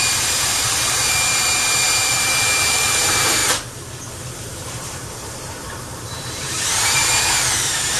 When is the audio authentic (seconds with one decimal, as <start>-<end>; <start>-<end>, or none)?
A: 3.4-4.1